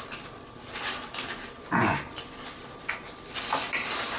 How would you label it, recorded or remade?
recorded